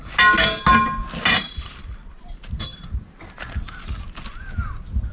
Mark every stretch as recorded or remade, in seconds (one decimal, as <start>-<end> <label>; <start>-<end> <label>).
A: 0.0-5.1 recorded